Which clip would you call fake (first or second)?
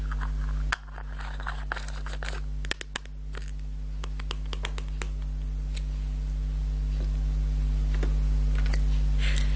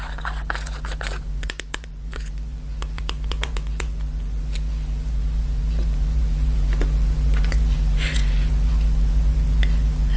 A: second